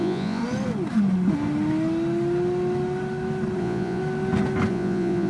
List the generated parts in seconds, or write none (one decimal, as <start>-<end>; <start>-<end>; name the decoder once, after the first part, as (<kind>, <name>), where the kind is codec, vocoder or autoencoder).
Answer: 0.0-0.4 (vocoder, Vocos); 3.6-4.0; 4.7-5.3